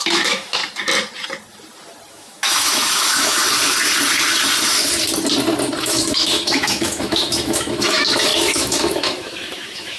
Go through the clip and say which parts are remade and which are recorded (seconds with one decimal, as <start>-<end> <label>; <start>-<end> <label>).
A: 0.0-0.6 remade; 0.6-2.1 recorded; 2.1-3.4 remade; 3.4-5.8 recorded; 5.8-10.0 remade

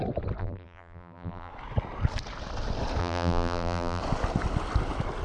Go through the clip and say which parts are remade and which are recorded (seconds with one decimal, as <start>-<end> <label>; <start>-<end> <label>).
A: 0.0-0.4 recorded; 0.4-1.5 remade; 1.5-3.0 recorded; 3.0-4.0 remade; 4.0-5.2 recorded

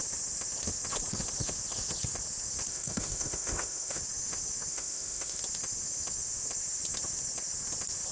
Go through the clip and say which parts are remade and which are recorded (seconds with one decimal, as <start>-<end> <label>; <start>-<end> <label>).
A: 0.0-2.7 recorded; 2.7-4.0 remade; 4.0-4.7 recorded; 4.7-5.4 remade; 5.4-8.1 recorded

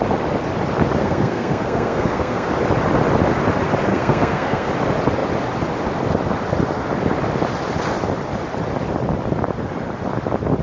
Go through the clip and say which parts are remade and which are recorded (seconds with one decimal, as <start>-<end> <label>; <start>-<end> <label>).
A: 0.0-1.0 recorded; 1.0-2.5 remade; 2.5-3.9 recorded; 3.9-4.7 remade; 4.7-10.6 recorded

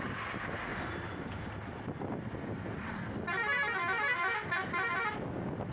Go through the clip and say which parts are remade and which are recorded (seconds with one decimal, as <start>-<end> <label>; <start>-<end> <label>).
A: 0.0-5.7 recorded

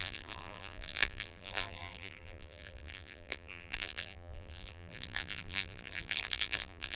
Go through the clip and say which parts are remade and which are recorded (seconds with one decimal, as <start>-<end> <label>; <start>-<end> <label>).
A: 0.0-7.0 remade

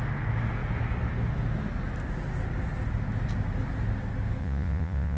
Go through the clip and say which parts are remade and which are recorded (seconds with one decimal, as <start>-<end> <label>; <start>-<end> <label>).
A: 0.0-4.4 recorded; 4.4-5.2 remade

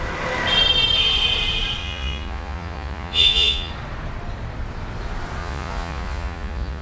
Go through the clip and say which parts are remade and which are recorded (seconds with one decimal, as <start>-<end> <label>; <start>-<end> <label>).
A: 0.0-1.8 recorded; 1.8-3.7 remade; 3.7-5.4 recorded; 5.4-6.8 remade